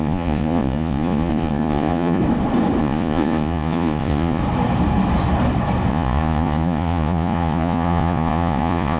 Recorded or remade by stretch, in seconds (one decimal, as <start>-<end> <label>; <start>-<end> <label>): 0.0-2.2 remade; 2.2-2.8 recorded; 2.8-4.4 remade; 4.4-5.9 recorded; 5.9-9.0 remade